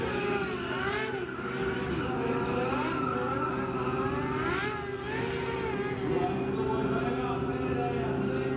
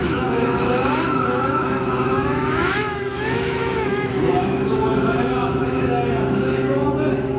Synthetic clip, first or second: second